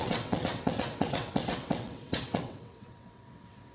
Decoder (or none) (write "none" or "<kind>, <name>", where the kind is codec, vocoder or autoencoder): vocoder, WaveNeXt